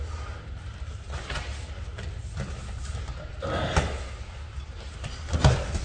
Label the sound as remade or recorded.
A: recorded